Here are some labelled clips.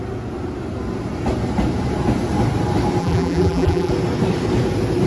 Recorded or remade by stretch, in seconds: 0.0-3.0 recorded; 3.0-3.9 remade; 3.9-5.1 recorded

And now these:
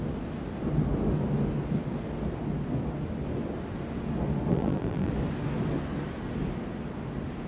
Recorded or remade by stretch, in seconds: 0.0-4.5 recorded; 4.5-5.1 remade; 5.1-7.5 recorded

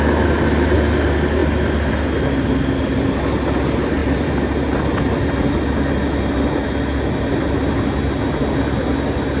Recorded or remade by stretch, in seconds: 0.0-9.4 recorded

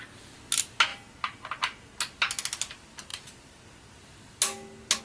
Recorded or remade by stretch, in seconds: 0.0-5.0 recorded